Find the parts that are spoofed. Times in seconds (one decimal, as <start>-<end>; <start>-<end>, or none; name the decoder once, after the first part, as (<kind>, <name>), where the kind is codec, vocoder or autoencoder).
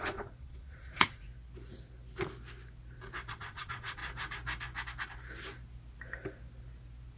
0.0-1.3 (vocoder, Vocos); 3.3-4.0